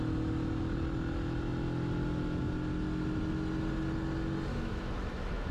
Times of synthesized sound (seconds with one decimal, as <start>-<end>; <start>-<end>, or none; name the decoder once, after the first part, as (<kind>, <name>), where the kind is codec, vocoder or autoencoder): 4.5-5.5 (autoencoder, DAC-VAE)